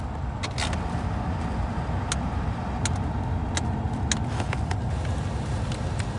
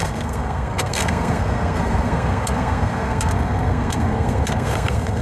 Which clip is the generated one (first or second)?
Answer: second